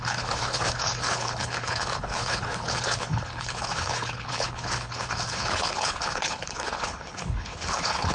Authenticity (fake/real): fake